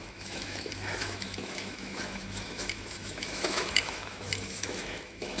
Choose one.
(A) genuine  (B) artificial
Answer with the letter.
B